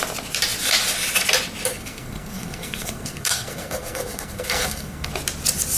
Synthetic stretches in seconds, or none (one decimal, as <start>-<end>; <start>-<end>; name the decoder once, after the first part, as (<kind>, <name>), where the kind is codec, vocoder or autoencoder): 1.7-5.1 (codec, SNAC)